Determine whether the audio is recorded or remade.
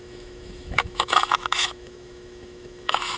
remade